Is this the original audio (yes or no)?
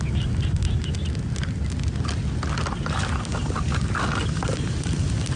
yes